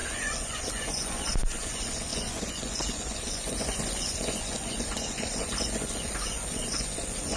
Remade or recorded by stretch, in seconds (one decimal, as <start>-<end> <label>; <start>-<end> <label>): 0.0-7.4 remade